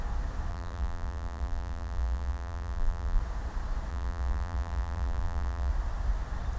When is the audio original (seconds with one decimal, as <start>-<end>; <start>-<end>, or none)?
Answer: 0.0-0.5; 3.2-3.9; 5.7-6.6